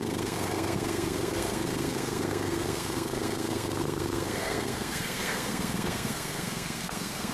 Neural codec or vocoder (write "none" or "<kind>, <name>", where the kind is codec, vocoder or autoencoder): codec, SNAC